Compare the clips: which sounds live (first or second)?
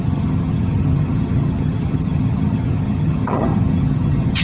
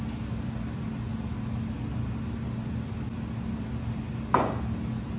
second